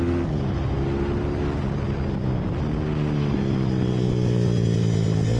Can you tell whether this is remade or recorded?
recorded